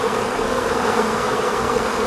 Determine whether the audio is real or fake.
fake